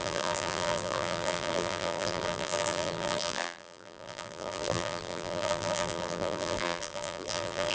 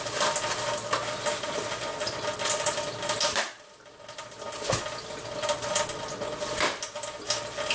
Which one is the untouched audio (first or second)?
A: second